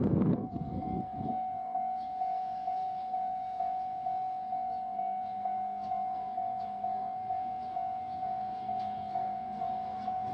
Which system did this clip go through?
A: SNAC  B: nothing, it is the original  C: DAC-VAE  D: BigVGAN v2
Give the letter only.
A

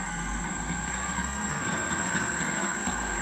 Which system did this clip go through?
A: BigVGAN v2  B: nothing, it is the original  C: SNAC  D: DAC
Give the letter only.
C